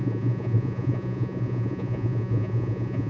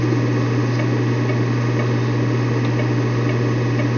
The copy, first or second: first